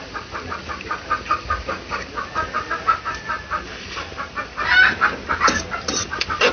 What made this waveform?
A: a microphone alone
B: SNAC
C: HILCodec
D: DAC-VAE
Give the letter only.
A